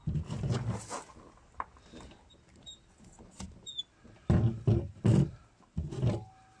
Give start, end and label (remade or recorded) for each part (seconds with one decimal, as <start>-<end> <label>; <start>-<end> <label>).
0.0-6.6 recorded